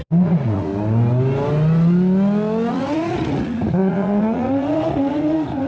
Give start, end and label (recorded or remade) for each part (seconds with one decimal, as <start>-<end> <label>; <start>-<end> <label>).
0.0-0.7 remade; 0.7-2.7 recorded; 2.7-5.7 remade